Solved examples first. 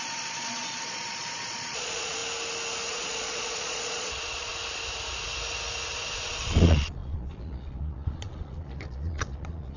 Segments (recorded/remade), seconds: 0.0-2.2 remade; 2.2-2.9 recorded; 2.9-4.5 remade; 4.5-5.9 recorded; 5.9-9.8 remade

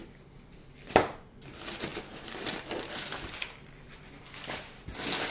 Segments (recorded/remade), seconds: 0.0-5.3 recorded

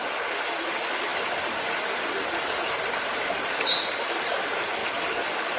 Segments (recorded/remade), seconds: 0.0-5.6 recorded

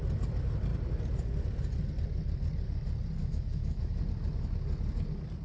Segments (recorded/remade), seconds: 0.0-3.2 recorded; 3.2-4.0 remade; 4.0-5.4 recorded

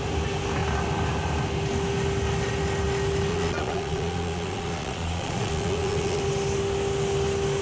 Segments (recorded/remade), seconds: 0.0-3.3 recorded; 3.3-6.2 remade; 6.2-7.6 recorded

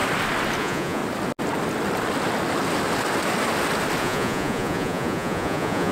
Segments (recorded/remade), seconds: 0.0-0.6 recorded; 0.6-1.0 remade; 1.0-4.0 recorded; 4.0-5.9 remade